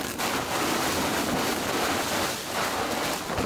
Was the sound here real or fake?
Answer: real